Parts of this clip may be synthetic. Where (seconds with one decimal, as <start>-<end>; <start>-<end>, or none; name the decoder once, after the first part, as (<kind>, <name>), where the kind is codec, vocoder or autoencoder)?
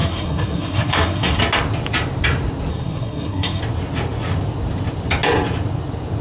0.0-1.4 (codec, SNAC); 2.7-3.6